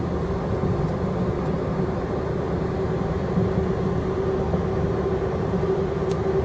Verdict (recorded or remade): recorded